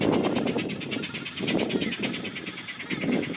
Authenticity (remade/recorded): recorded